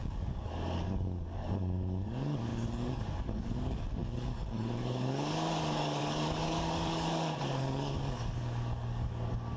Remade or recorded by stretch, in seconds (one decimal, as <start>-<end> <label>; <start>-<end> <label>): 0.0-9.6 remade